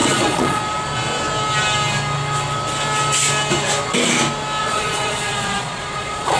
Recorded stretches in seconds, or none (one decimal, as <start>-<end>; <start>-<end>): 0.6-4.6